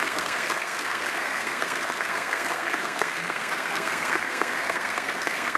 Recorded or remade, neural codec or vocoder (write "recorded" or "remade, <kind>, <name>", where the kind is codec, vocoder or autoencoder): remade, codec, SNAC